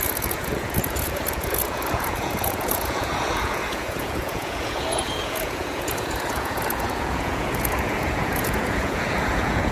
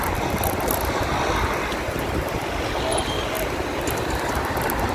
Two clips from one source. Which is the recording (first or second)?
second